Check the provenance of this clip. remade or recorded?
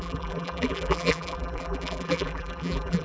remade